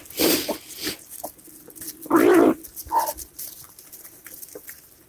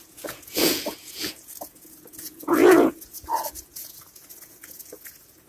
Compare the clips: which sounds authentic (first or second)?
first